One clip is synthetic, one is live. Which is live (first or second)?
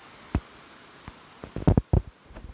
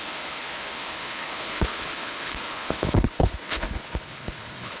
first